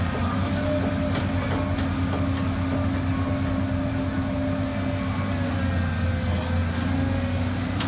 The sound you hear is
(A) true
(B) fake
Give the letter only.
A